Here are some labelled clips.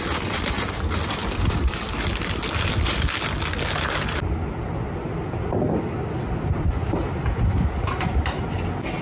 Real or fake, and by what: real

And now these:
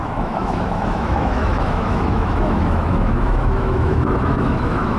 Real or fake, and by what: fake, autoencoder, DAC-VAE